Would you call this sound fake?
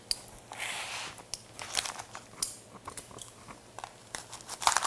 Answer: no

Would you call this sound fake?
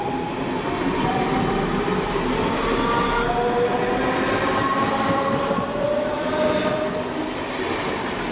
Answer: no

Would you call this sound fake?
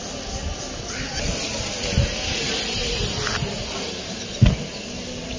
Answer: no